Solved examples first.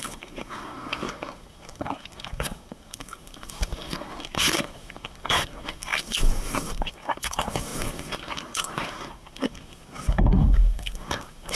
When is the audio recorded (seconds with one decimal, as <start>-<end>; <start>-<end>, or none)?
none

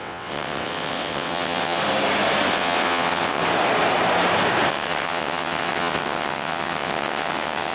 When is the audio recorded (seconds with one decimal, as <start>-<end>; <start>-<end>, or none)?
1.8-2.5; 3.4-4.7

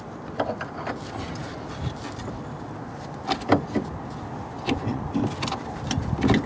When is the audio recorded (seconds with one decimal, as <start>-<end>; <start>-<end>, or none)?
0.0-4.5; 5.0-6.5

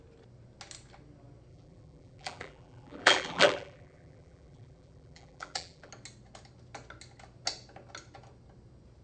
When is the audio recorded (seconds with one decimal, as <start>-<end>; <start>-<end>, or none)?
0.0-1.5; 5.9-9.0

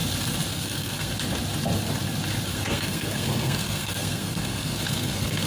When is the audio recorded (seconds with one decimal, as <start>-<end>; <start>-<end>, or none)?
0.0-0.5; 1.1-2.5